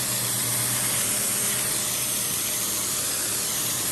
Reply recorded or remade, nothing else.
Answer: recorded